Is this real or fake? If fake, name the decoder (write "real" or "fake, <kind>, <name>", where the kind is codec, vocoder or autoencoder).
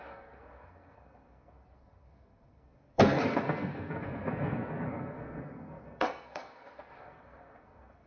fake, codec, SNAC